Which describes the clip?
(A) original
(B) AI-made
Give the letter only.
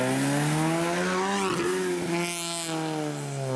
A